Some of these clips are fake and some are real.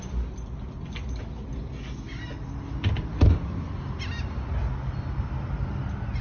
real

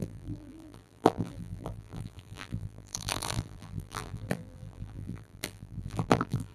fake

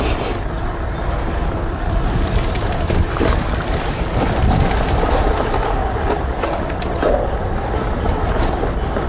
real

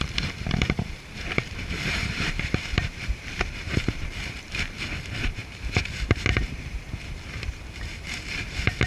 fake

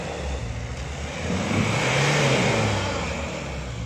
real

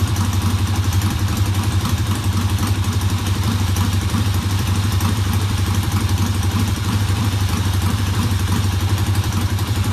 fake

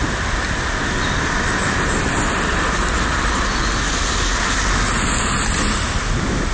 real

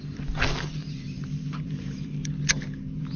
fake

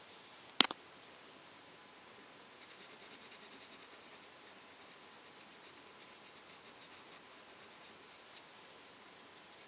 real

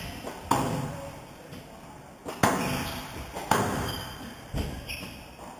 fake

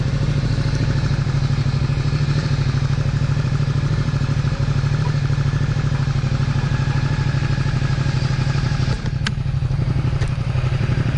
fake